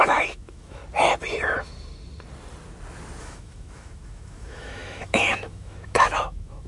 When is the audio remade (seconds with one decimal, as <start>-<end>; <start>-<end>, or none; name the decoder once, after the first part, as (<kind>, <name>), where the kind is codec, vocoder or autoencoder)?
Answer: 0.0-0.8 (autoencoder, DAC-VAE); 3.2-6.7